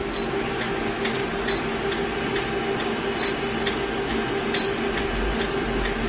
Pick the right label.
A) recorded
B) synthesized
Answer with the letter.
A